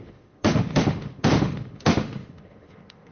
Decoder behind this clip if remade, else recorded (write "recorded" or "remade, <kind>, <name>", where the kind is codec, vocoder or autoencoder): remade, autoencoder, DAC-VAE